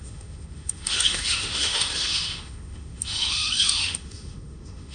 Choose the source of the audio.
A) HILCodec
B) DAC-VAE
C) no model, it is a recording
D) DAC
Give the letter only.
B